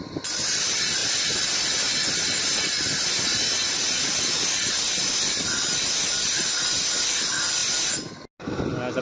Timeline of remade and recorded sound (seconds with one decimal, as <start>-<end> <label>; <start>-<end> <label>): 0.0-9.0 recorded